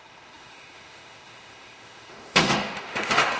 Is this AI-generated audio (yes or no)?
yes